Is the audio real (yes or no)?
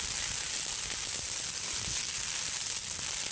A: yes